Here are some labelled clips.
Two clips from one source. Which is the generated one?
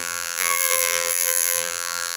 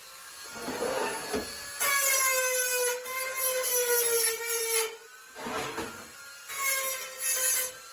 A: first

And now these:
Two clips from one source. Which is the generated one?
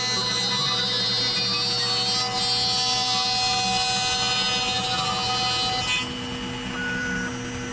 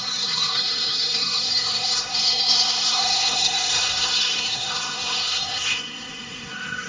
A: second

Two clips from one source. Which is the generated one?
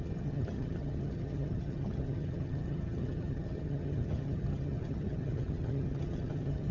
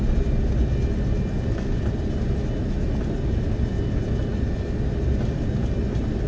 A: first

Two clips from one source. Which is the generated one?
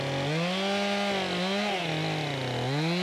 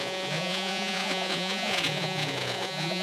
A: second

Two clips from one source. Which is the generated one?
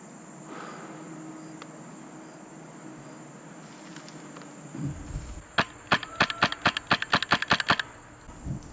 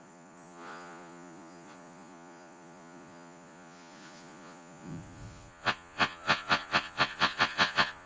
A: second